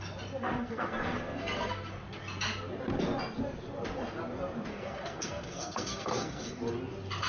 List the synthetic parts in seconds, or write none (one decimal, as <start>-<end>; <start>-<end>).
0.4-1.9; 4.7-6.6